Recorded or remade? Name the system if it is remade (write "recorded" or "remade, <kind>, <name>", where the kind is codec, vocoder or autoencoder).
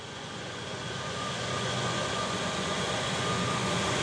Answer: remade, vocoder, Vocos